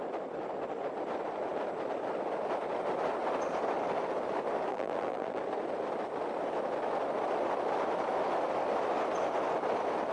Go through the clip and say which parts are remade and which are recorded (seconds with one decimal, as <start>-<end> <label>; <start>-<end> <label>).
0.0-4.7 recorded; 4.7-5.4 remade; 5.4-10.1 recorded